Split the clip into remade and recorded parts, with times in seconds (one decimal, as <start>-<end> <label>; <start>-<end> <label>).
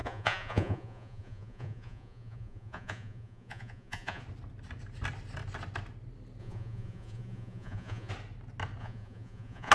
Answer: 0.0-4.2 remade; 4.2-6.4 recorded; 6.4-8.1 remade; 8.1-8.8 recorded; 8.8-9.7 remade